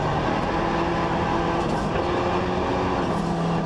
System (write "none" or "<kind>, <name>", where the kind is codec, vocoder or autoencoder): none